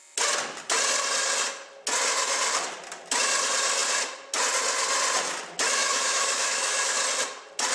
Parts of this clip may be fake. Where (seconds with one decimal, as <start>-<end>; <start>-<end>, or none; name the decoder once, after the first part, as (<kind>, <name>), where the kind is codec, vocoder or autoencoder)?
5.8-7.0 (autoencoder, DAC-VAE)